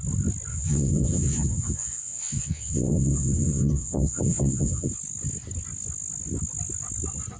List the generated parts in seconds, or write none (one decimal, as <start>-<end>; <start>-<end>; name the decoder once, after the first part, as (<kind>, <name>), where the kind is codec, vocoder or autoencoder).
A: 0.5-4.9 (vocoder, WaveNeXt)